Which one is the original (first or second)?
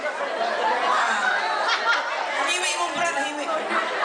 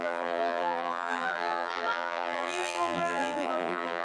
first